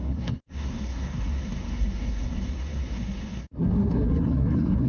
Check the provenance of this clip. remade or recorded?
remade